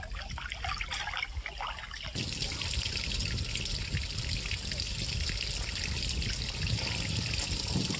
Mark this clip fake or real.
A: real